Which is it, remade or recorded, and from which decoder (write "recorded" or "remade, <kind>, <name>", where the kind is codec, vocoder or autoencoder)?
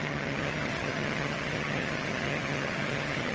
remade, vocoder, HiFi-GAN